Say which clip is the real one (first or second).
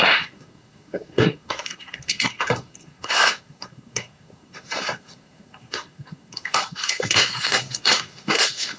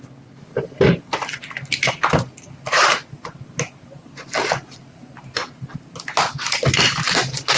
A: second